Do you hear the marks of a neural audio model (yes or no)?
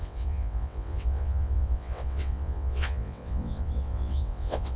yes